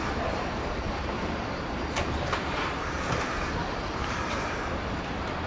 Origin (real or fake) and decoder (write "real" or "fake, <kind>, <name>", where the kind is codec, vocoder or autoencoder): fake, vocoder, BigVGAN v2